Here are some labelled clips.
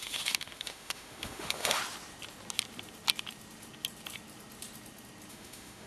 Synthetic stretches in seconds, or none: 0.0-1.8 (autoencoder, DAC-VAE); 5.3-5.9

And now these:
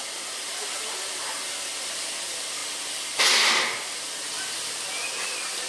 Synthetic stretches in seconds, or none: none

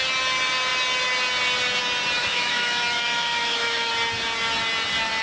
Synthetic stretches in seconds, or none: 2.2-3.9 (autoencoder, DAC-VAE)

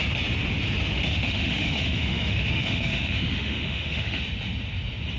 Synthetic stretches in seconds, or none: 1.1-4.2 (autoencoder, DAC-VAE)

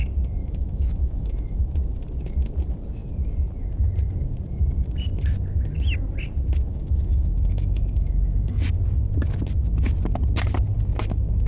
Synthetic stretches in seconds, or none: 0.4-1.6 (autoencoder, DAC-VAE); 6.7-8.6

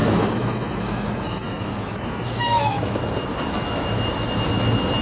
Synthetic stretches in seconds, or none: 0.0-3.0 (autoencoder, DAC-VAE)